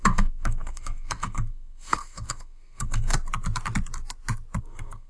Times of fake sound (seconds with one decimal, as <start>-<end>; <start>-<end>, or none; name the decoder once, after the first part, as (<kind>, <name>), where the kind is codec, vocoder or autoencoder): 0.0-3.1 (codec, SNAC); 4.6-5.1